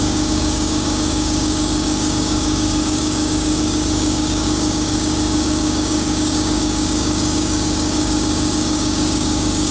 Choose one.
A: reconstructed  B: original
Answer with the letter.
A